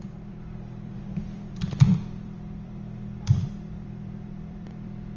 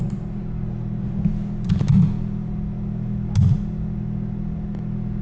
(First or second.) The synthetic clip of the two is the first